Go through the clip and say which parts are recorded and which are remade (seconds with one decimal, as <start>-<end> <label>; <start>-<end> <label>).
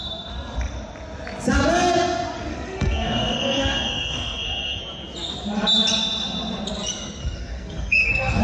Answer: 0.0-2.5 recorded; 2.5-4.8 remade; 4.8-7.2 recorded; 7.2-8.4 remade